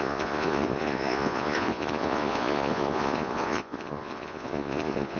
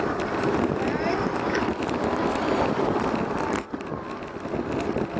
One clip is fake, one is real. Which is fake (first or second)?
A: first